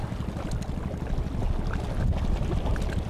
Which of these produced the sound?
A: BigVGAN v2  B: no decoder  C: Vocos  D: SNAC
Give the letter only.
B